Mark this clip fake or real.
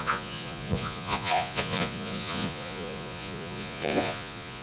fake